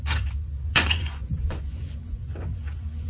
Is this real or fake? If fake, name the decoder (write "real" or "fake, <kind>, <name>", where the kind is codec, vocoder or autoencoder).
fake, vocoder, Vocos